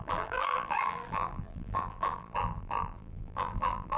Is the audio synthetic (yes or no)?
yes